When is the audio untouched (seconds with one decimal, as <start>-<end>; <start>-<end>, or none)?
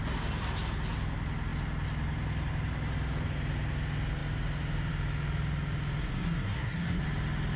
0.0-6.0; 7.0-7.6